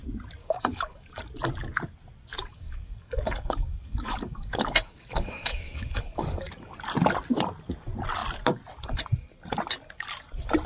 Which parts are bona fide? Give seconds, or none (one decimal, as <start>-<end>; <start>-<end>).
0.0-0.4; 1.2-2.3; 6.5-10.7

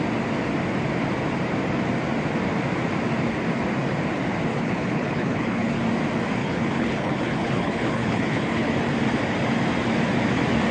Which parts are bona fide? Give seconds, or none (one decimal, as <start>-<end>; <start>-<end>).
0.0-4.5; 5.8-6.4; 8.7-10.7

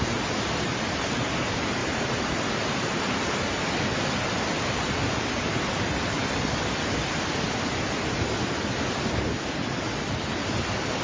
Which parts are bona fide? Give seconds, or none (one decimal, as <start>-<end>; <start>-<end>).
0.0-1.8; 3.4-11.0

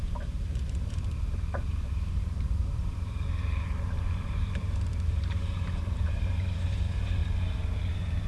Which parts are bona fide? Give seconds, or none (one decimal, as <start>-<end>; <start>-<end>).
none